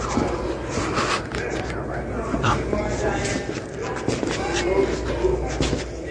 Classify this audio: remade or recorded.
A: recorded